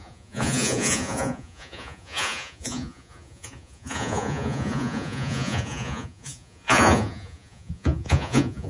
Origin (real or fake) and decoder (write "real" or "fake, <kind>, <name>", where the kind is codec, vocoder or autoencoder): fake, vocoder, Vocos